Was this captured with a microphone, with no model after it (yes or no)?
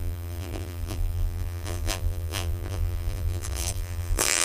no